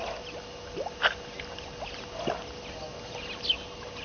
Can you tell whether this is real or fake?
real